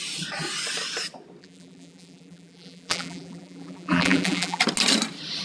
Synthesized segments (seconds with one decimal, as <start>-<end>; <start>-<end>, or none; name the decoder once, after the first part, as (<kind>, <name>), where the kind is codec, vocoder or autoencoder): 1.4-4.6 (vocoder, BigVGAN v2)